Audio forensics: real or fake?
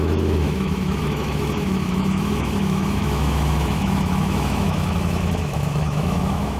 fake